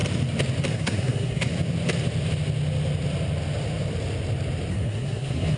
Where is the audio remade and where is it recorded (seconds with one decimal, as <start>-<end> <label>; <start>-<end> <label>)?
0.0-0.7 recorded; 0.7-1.5 remade; 1.5-4.7 recorded; 4.7-5.6 remade

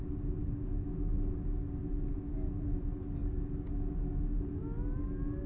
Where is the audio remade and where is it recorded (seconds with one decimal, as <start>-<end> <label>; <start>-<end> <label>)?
0.0-0.4 recorded; 0.4-1.8 remade; 1.8-5.5 recorded

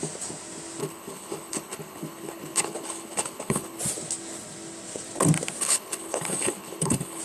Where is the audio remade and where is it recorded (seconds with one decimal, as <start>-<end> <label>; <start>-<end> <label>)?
0.0-0.8 recorded; 0.8-3.8 remade; 3.8-5.6 recorded; 5.6-7.2 remade

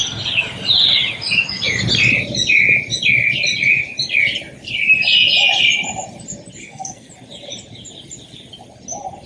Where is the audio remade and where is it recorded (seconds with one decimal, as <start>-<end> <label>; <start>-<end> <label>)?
0.0-6.6 recorded; 6.6-7.1 remade; 7.1-9.3 recorded

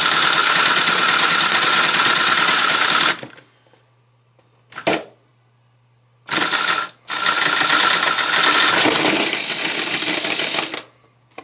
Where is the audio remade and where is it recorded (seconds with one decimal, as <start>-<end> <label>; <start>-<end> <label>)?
0.0-0.4 recorded; 0.4-2.8 remade; 2.8-11.4 recorded

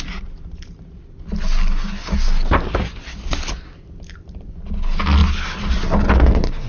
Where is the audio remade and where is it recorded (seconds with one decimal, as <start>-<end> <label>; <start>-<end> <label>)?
0.0-6.7 recorded

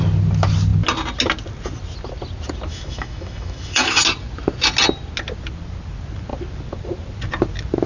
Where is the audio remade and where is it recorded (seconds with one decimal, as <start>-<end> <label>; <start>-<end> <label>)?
0.0-2.7 recorded; 2.7-4.0 remade; 4.0-7.9 recorded